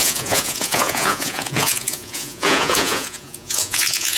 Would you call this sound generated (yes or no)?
yes